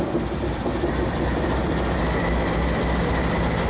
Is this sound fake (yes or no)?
no